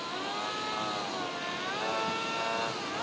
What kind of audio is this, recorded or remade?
recorded